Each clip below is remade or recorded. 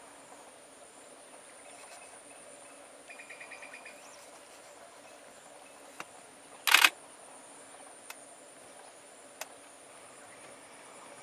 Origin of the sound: recorded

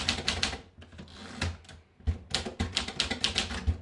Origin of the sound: recorded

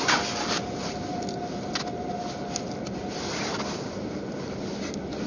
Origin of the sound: recorded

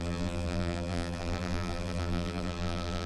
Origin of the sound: remade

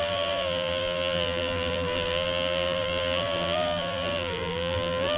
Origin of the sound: remade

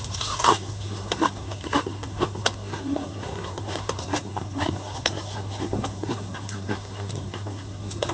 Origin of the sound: remade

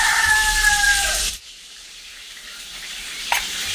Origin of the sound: remade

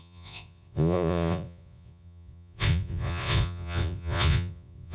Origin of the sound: remade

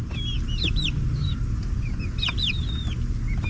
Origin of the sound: recorded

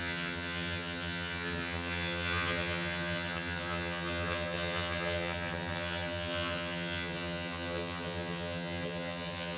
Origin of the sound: remade